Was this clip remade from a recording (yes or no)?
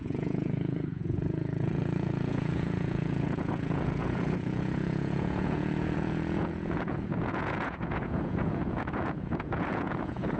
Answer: yes